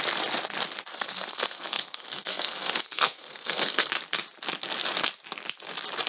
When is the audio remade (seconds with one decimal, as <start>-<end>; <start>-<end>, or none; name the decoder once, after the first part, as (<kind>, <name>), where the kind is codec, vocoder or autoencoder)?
0.9-3.9 (codec, SNAC)